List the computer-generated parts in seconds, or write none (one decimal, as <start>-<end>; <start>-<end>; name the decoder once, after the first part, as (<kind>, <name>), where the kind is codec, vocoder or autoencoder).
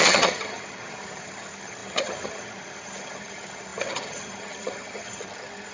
0.0-5.7 (vocoder, HiFi-GAN)